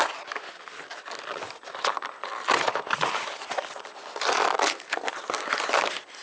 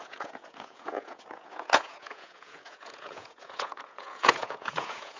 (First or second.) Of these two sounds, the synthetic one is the second